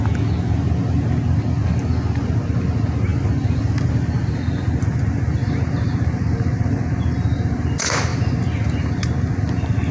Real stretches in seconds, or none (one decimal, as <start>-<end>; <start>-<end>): 0.0-9.9